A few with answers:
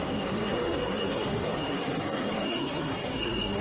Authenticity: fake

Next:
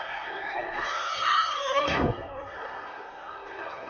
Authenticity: fake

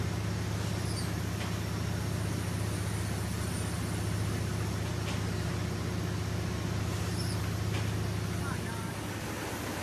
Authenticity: real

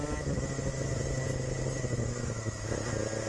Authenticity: real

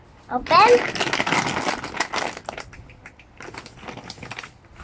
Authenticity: real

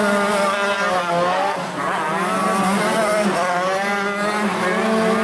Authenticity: real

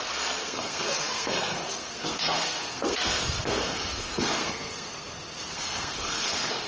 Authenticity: fake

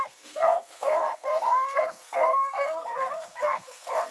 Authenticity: fake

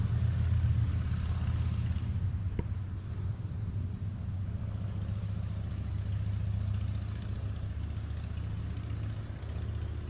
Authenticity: real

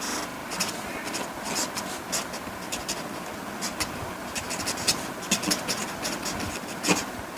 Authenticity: real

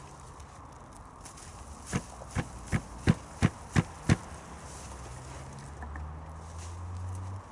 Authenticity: real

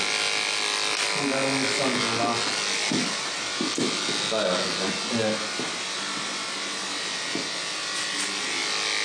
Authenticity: real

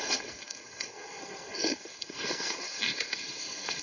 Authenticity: fake